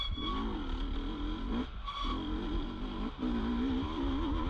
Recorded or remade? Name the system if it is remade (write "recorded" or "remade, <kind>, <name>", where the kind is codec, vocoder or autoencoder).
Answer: recorded